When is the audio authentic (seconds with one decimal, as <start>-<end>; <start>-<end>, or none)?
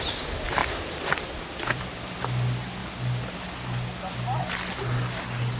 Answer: 0.0-0.6; 2.2-5.6